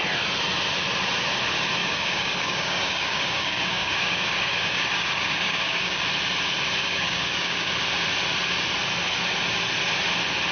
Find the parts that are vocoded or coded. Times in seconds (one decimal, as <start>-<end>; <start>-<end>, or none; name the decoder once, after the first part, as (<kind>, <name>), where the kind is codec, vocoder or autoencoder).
1.8-6.0 (codec, DAC); 6.8-7.7